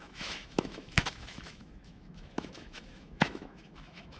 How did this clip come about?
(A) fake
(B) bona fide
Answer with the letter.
A